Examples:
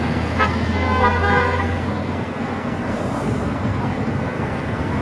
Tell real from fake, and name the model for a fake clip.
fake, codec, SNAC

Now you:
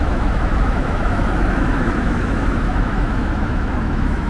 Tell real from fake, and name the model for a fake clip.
fake, autoencoder, DAC-VAE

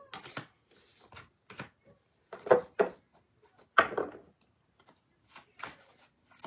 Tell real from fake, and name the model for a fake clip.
real